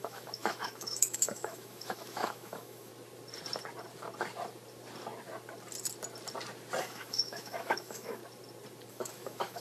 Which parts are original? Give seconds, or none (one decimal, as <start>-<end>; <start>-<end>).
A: 2.9-6.8; 8.2-8.9